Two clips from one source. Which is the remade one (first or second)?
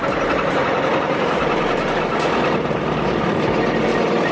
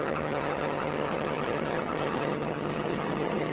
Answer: second